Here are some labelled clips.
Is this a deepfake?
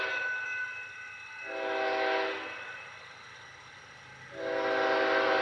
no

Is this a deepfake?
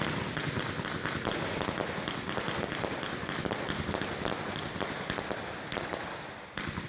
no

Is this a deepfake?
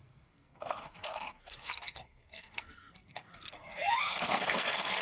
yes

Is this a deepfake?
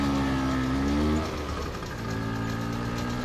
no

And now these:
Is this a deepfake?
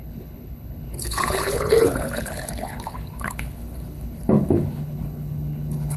yes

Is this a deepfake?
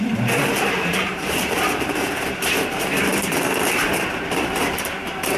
yes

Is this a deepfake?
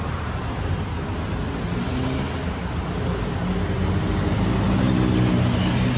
no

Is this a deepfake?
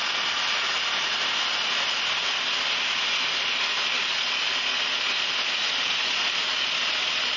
no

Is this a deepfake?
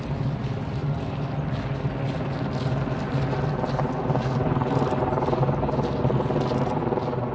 no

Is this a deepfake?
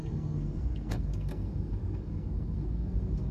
yes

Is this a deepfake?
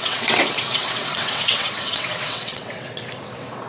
yes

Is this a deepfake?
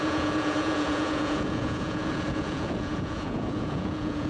yes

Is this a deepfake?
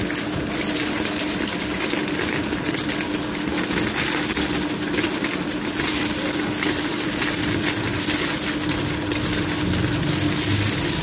no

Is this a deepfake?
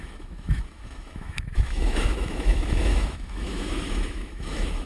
yes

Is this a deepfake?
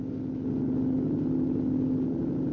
no